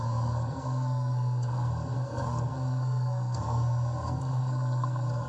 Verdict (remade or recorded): remade